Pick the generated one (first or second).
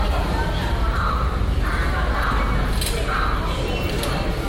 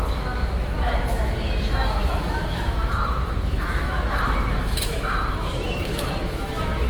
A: second